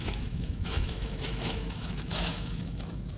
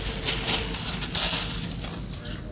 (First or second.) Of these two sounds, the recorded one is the second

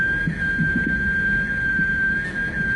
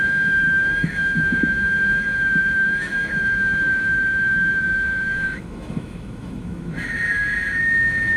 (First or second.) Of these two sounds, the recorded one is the first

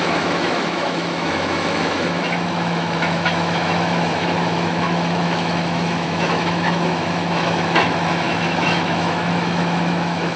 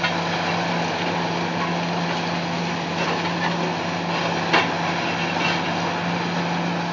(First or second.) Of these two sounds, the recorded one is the second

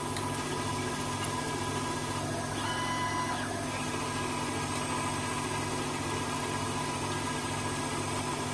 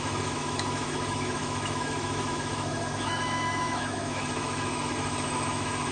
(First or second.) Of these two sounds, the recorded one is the first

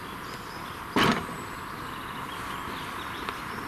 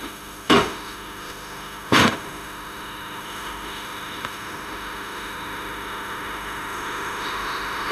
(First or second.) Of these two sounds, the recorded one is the first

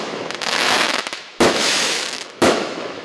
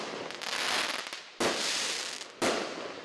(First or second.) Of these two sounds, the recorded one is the second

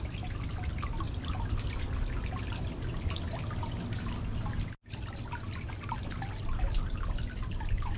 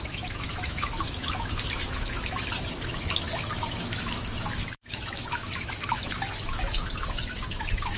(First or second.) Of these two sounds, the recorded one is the first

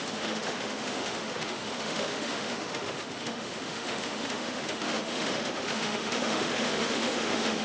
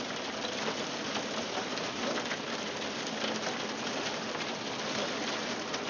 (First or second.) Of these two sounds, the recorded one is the second